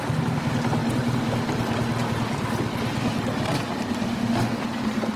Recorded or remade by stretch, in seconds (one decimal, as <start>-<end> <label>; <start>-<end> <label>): 0.0-4.1 recorded; 4.1-4.6 remade; 4.6-5.2 recorded

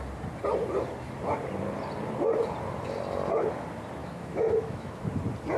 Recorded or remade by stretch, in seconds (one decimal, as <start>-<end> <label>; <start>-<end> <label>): 0.0-4.0 recorded; 4.0-5.0 remade; 5.0-5.6 recorded

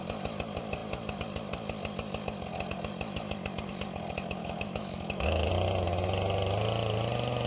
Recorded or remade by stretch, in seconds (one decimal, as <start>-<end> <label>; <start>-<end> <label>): 0.0-4.4 recorded; 4.4-5.5 remade; 5.5-7.5 recorded

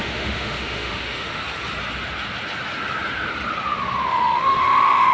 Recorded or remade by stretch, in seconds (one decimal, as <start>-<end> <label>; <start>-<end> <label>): 0.0-1.4 remade; 1.4-4.1 recorded; 4.1-5.1 remade

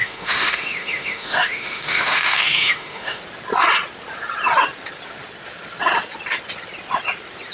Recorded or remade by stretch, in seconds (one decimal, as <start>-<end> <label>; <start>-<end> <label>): 0.0-3.2 remade; 3.2-7.5 recorded

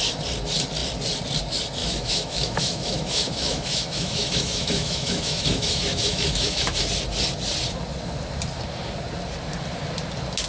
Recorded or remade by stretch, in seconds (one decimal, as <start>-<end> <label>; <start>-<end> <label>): 0.0-1.8 recorded; 1.8-6.8 remade; 6.8-10.5 recorded